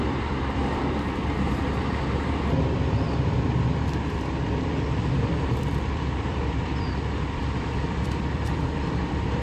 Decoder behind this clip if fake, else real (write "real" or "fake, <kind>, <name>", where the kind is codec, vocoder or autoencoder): fake, vocoder, BigVGAN v2